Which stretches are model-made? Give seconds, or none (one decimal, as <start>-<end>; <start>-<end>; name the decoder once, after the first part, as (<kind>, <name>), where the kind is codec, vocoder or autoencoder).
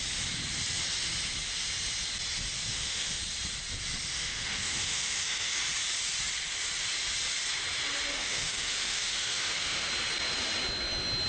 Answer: 2.7-3.2 (autoencoder, DAC-VAE); 4.1-5.6; 8.1-9.9